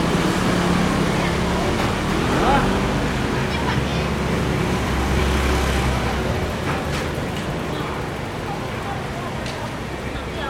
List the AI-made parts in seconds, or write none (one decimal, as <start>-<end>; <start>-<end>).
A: 3.9-5.2